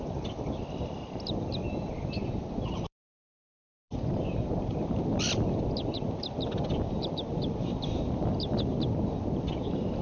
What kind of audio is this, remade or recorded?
recorded